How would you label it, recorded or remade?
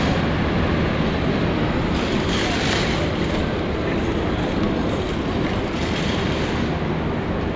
recorded